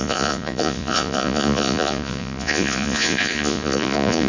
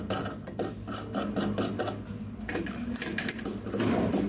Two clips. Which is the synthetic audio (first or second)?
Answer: first